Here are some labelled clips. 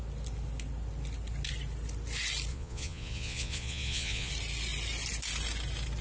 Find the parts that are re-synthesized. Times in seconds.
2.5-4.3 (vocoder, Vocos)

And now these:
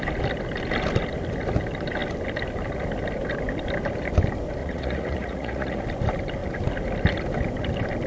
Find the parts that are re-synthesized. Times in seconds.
4.6-5.8 (vocoder, Vocos)

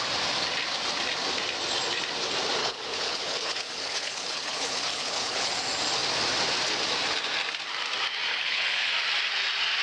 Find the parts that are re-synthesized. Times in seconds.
2.6-5.5 (codec, HILCodec); 8.3-8.9

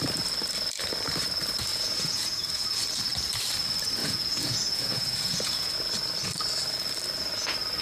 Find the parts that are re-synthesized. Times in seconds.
1.7-2.5 (vocoder, Vocos); 4.0-5.7

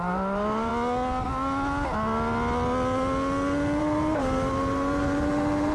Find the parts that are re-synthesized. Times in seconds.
0.0-0.7 (vocoder, BigVGAN v2); 3.8-5.7

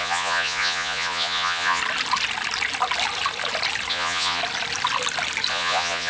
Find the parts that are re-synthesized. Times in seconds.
0.0-1.8 (vocoder, Vocos); 3.9-4.4; 5.5-6.1

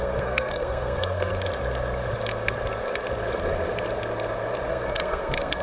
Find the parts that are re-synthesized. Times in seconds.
0.0-1.3 (codec, SNAC); 4.7-5.6